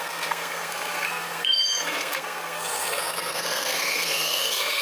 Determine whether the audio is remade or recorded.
remade